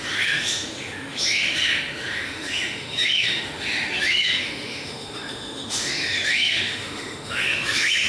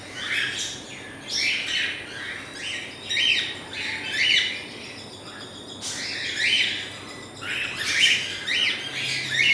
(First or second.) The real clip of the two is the second